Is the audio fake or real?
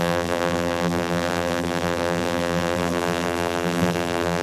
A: fake